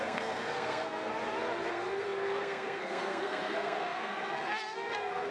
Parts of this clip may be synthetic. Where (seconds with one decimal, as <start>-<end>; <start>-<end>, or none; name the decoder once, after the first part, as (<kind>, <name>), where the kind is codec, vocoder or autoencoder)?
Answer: 0.0-1.1 (codec, SNAC); 1.7-5.3